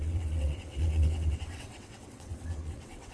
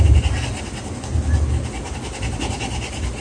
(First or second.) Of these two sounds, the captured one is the second